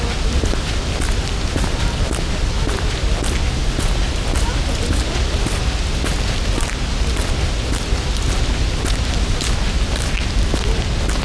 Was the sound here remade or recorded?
recorded